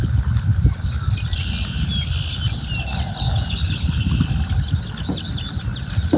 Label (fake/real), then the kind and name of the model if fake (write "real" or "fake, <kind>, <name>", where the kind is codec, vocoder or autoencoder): real